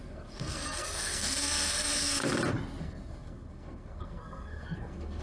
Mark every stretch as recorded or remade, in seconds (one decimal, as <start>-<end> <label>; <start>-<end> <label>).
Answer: 0.0-2.2 remade; 2.2-2.8 recorded; 2.8-5.2 remade